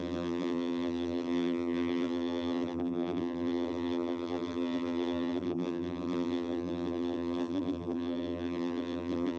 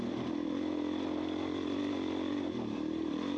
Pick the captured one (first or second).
second